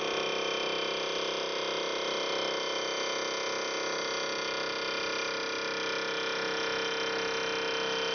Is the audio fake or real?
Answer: real